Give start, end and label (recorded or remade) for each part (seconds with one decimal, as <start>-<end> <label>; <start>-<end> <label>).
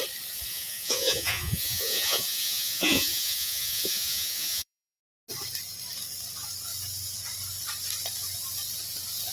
0.0-0.5 recorded; 0.5-5.0 remade; 5.0-9.3 recorded